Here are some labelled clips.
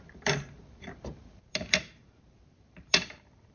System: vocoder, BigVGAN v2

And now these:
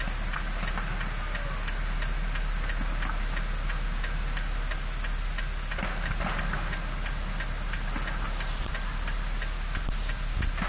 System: none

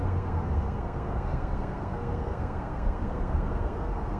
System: codec, SNAC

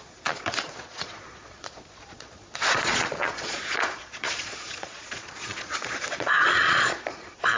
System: vocoder, Vocos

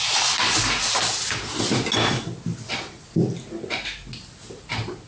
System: none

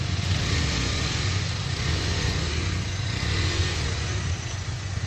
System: vocoder, Vocos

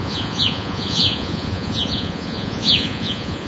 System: vocoder, Vocos